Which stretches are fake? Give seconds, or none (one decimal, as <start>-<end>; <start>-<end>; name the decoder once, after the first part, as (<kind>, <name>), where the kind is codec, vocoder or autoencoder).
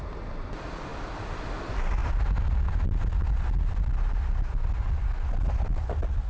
none